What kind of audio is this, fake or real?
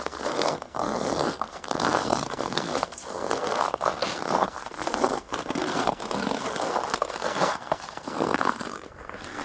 fake